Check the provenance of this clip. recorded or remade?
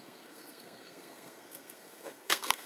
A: remade